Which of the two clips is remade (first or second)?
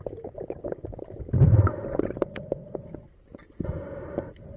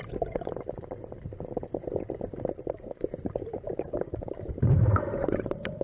second